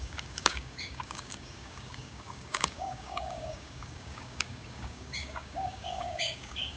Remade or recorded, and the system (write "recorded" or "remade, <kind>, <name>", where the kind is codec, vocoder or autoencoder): remade, codec, DAC